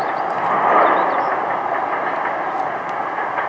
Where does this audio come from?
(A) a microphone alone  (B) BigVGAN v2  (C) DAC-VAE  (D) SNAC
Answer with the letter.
A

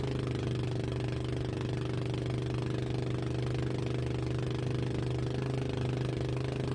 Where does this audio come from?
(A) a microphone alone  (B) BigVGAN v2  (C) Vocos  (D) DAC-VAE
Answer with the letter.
A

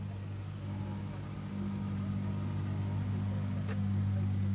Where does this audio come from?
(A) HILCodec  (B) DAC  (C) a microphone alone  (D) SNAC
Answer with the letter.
C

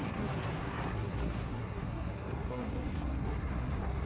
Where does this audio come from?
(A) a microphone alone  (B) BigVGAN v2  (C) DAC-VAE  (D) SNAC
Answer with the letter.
D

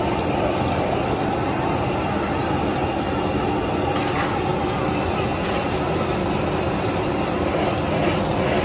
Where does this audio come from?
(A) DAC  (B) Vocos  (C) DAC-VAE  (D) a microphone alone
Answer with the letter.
D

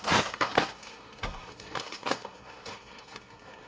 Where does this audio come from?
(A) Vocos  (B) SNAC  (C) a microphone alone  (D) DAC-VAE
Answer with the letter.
B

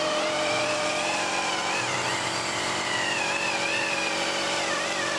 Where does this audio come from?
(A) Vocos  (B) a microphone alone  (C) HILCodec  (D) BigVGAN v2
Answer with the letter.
D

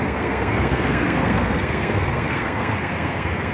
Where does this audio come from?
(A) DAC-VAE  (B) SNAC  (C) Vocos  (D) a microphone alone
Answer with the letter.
B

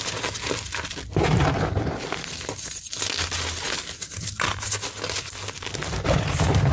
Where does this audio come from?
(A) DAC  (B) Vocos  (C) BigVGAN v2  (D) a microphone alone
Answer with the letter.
D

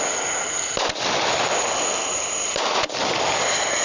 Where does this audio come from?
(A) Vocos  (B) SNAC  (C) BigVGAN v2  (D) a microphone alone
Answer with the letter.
D